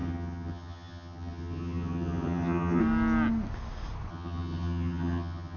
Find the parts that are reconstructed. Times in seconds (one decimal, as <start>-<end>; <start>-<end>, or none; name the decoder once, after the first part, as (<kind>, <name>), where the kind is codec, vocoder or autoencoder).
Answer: 0.0-2.8 (vocoder, HiFi-GAN); 4.1-5.6

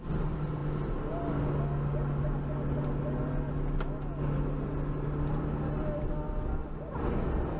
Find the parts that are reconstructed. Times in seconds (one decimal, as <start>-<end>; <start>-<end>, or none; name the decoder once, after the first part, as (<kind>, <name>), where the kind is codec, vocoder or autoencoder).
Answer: none

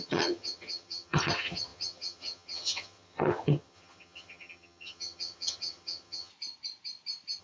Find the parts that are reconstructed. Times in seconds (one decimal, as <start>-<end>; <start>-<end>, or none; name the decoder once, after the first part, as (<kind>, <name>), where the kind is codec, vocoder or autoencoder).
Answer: 0.0-6.3 (vocoder, HiFi-GAN)

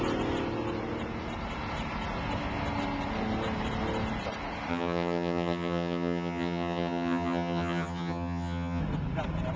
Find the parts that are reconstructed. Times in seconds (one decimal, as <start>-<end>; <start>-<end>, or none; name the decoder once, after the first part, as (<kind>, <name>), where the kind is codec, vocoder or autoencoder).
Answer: 4.7-8.8 (vocoder, HiFi-GAN)

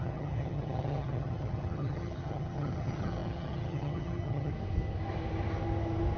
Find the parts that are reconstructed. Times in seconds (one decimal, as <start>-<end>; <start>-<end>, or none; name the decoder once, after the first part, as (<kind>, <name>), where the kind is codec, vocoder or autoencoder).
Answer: 0.0-4.5 (vocoder, HiFi-GAN)

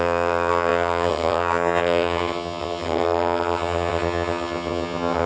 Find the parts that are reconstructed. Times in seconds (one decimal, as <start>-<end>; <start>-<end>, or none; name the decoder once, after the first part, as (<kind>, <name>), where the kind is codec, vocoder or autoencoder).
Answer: 0.0-5.3 (vocoder, HiFi-GAN)

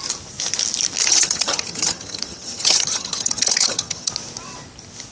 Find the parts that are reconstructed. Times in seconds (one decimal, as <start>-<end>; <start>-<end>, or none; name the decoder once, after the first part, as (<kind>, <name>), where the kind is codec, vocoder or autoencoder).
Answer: 1.0-4.1 (vocoder, HiFi-GAN)

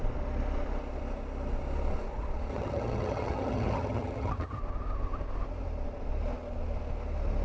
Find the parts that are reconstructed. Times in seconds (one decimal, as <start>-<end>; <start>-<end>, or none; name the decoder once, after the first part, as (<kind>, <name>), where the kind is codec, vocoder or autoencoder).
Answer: 2.5-4.6 (vocoder, HiFi-GAN)